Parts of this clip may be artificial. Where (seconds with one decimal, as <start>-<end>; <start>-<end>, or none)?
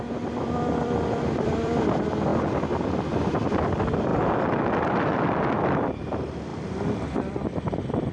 0.0-2.3; 3.6-8.1